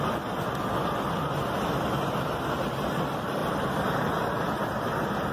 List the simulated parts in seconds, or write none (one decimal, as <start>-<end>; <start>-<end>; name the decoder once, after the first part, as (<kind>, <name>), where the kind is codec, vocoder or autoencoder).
3.4-4.4 (vocoder, BigVGAN v2)